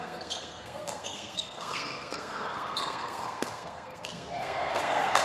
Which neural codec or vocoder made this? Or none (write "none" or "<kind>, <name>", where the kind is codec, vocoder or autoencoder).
codec, SNAC